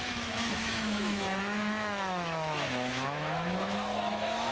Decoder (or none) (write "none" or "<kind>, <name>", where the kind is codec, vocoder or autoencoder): autoencoder, DAC-VAE